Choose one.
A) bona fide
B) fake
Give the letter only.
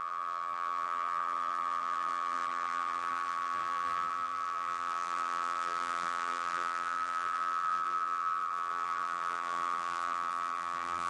B